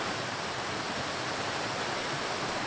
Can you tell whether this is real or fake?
real